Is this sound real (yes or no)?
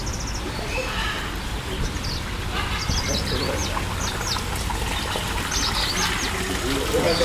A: yes